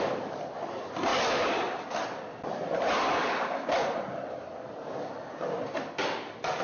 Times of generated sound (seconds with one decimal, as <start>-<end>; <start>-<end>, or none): none